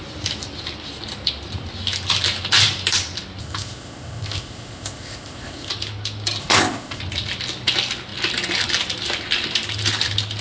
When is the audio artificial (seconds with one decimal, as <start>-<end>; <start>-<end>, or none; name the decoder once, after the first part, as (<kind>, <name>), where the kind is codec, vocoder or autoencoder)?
3.4-5.7 (codec, ZipCodec); 6.4-7.0